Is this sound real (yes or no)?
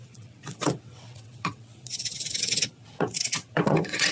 no